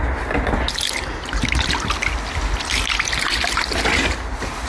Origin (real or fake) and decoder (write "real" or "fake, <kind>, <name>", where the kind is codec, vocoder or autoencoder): real